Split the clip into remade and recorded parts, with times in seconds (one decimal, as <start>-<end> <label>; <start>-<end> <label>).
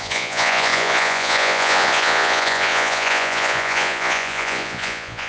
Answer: 0.0-5.3 remade